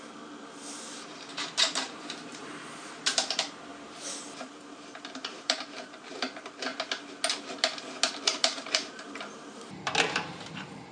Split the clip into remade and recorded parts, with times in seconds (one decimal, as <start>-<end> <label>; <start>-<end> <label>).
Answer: 0.0-3.7 remade; 3.7-4.4 recorded; 4.4-6.7 remade; 6.7-8.1 recorded; 8.1-10.9 remade